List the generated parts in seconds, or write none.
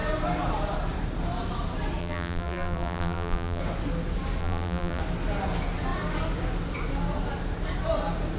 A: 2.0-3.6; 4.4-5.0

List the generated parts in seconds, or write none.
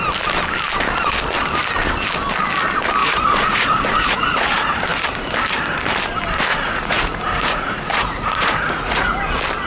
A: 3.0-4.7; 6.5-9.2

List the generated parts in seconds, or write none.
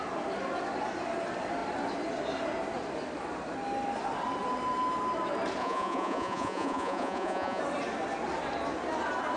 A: 5.6-7.6